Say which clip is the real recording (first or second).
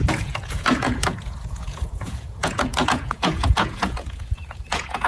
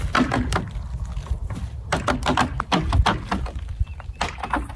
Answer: second